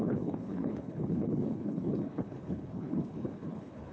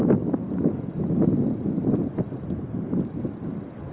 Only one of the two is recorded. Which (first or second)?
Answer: second